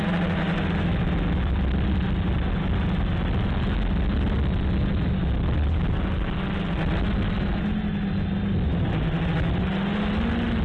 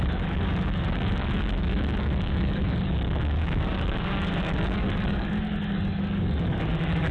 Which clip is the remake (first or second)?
second